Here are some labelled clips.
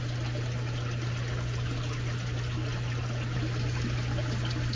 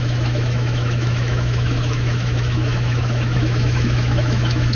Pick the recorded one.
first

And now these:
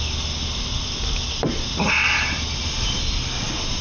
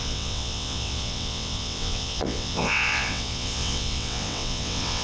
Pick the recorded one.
first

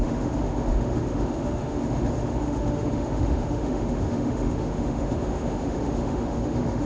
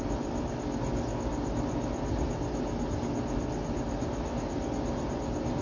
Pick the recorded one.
second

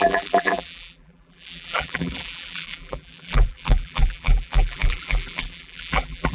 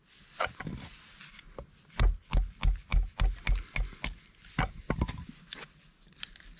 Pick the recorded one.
second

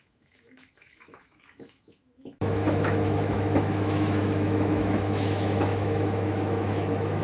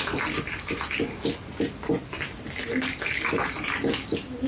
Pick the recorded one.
second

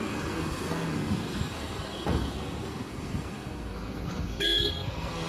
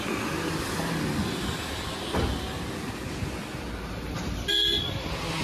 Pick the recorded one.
second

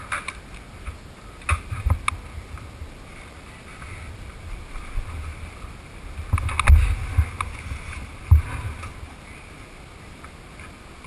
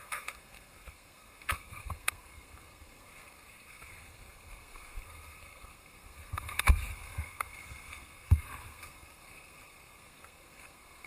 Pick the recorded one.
first